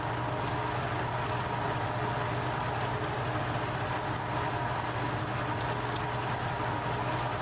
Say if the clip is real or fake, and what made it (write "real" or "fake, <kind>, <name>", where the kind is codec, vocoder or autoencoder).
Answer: real